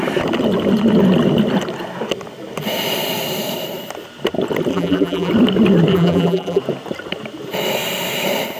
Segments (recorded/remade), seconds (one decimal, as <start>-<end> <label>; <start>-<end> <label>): 0.0-4.7 recorded; 4.7-5.3 remade; 5.3-5.9 recorded; 5.9-6.6 remade; 6.6-8.6 recorded

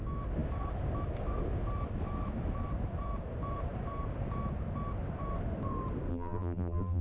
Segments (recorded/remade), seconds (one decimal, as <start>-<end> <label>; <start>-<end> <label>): 0.0-6.1 recorded; 6.1-7.0 remade

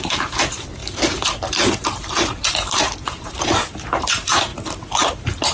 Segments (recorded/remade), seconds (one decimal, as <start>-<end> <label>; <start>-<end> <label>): 0.0-4.5 remade; 4.5-5.1 recorded; 5.1-5.5 remade

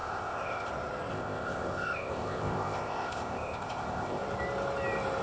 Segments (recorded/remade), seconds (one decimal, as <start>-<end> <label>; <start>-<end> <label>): 0.0-0.7 remade; 0.7-1.1 recorded; 1.1-4.2 remade; 4.2-5.2 recorded

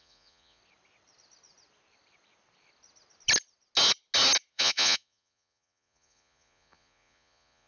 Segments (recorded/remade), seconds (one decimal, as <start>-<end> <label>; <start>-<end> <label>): 0.0-0.6 remade; 0.6-4.5 recorded; 4.5-7.7 remade